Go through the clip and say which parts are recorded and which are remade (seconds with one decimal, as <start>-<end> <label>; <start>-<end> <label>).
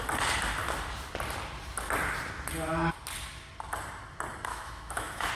0.0-4.5 recorded; 4.5-5.3 remade